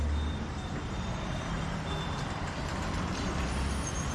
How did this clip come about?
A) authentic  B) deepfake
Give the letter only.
B